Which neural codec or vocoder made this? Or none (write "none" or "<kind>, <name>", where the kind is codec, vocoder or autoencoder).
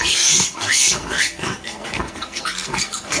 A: codec, SNAC